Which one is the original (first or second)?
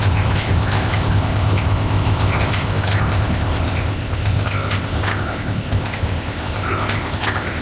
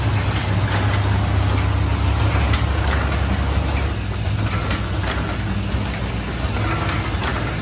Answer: second